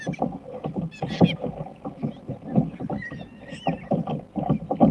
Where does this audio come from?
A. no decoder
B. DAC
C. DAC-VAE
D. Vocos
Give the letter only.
A